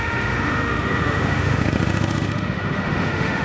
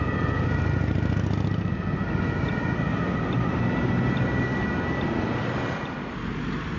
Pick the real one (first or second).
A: second